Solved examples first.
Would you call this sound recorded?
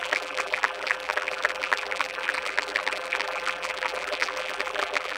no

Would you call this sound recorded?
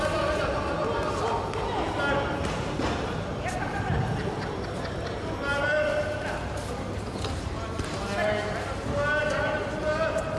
yes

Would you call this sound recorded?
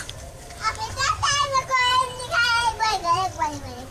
no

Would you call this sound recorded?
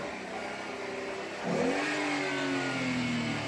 yes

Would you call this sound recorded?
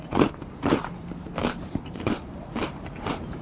no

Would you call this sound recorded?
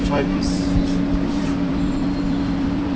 no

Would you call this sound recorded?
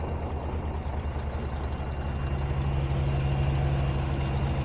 yes